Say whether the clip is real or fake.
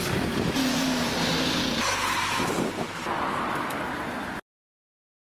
real